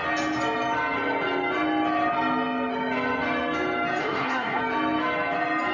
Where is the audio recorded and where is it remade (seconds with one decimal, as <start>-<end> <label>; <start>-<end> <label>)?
0.0-4.0 recorded; 4.0-4.6 remade; 4.6-5.7 recorded